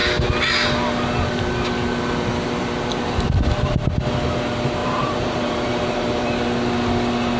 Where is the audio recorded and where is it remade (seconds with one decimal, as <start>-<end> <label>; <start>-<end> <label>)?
0.0-4.8 recorded; 4.8-6.3 remade; 6.3-7.4 recorded